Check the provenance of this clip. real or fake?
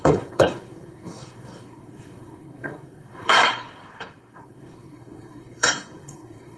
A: fake